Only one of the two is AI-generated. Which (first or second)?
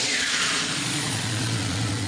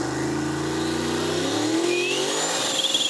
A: first